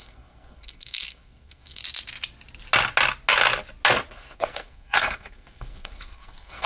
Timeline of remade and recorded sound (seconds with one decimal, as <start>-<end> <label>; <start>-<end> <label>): 0.0-1.8 remade; 1.8-4.1 recorded; 4.1-6.7 remade